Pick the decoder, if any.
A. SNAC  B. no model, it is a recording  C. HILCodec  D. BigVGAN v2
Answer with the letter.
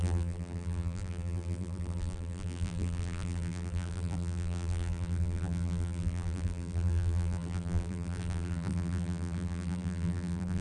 D